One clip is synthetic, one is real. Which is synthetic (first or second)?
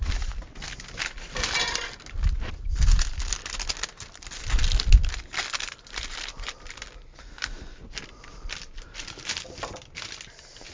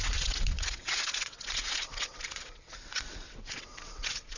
second